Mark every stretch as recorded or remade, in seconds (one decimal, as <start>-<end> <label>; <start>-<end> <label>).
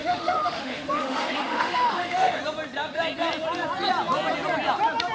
0.0-2.4 remade; 2.4-5.1 recorded